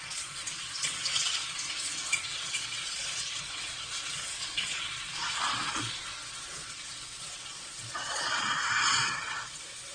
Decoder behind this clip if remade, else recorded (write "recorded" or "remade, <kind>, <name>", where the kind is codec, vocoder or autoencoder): remade, vocoder, Vocos